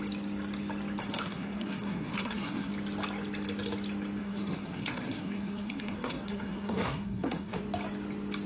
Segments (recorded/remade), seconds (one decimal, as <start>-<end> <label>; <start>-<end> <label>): 0.0-1.0 recorded; 1.0-2.7 remade; 2.7-4.2 recorded; 4.2-7.6 remade; 7.6-8.5 recorded